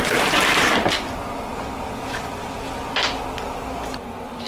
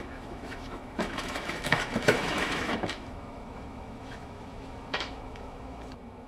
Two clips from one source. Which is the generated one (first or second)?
second